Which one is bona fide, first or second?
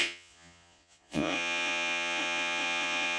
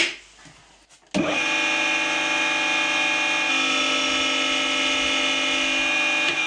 second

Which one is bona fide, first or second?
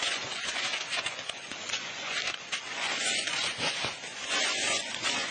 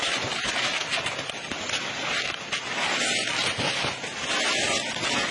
second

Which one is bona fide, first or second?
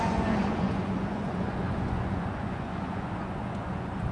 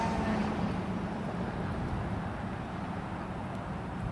second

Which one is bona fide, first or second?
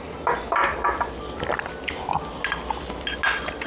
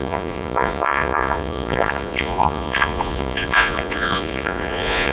first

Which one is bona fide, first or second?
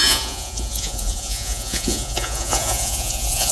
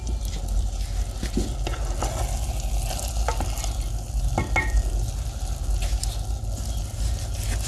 second